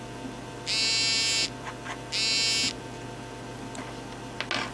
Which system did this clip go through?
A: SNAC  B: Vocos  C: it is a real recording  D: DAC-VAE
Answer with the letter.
C